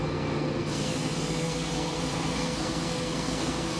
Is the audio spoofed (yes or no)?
yes